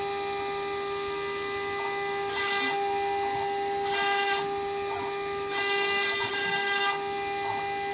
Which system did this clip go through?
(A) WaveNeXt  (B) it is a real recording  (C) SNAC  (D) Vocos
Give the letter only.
B